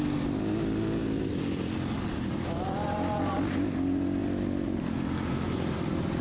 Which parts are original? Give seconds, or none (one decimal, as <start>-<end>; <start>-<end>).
0.0-6.2